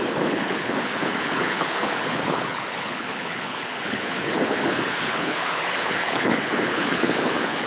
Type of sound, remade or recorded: remade